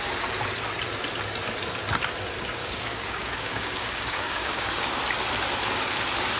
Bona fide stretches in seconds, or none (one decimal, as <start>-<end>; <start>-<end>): 0.0-2.6; 5.0-6.4